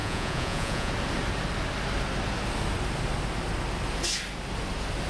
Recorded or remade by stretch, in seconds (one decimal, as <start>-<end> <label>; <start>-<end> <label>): 0.0-0.9 remade; 0.9-5.1 recorded

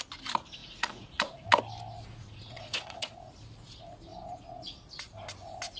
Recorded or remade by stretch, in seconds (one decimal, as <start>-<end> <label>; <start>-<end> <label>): 0.0-0.6 recorded; 0.6-1.6 remade; 1.6-2.2 recorded; 2.2-3.4 remade; 3.4-5.8 recorded

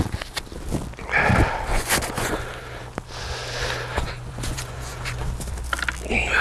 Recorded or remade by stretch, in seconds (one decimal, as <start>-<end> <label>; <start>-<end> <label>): 0.0-1.7 recorded; 1.7-2.4 remade; 2.4-3.9 recorded; 3.9-5.2 remade; 5.2-6.4 recorded

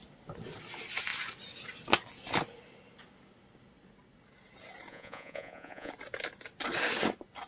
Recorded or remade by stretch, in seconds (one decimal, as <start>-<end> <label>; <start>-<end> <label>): 0.0-4.9 recorded; 4.9-5.9 remade; 5.9-7.5 recorded

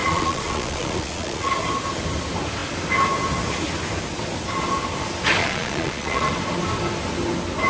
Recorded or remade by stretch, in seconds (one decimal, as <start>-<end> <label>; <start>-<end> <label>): 0.0-1.5 remade; 1.5-5.4 recorded; 5.4-6.3 remade; 6.3-7.7 recorded

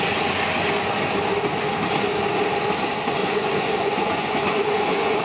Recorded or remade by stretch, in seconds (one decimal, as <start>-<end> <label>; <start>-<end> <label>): 0.0-3.2 recorded; 3.2-5.2 remade

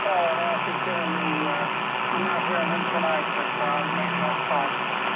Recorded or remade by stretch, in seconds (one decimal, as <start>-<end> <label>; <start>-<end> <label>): 0.0-5.2 recorded